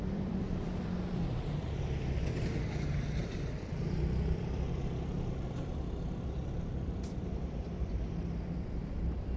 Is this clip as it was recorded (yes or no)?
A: no